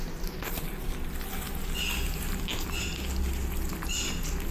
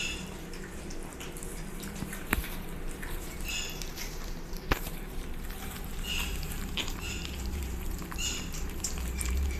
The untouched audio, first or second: first